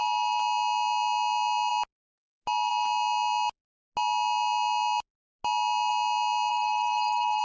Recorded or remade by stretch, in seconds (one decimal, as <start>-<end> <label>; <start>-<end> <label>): 0.0-6.5 recorded; 6.5-7.4 remade